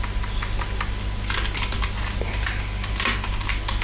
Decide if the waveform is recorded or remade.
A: recorded